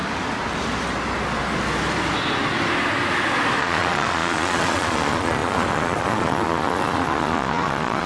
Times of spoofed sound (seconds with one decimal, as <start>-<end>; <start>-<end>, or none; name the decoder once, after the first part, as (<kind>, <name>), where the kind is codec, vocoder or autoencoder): 3.6-8.1 (vocoder, Vocos)